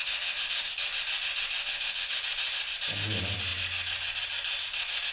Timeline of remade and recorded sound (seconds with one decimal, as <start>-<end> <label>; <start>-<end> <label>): 0.0-0.7 remade; 0.7-1.6 recorded; 1.6-2.2 remade; 2.2-5.1 recorded